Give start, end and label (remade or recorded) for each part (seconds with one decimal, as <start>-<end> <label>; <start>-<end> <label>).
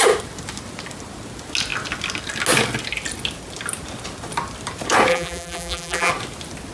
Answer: 0.0-5.1 recorded; 5.1-6.1 remade; 6.1-6.7 recorded